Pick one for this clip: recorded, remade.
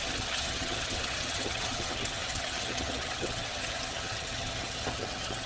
remade